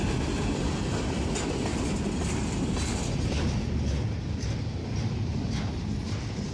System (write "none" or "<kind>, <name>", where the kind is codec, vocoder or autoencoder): none